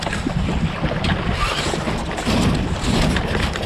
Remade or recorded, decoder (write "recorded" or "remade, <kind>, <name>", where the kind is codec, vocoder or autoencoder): recorded